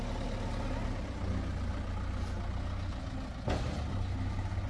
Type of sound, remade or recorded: recorded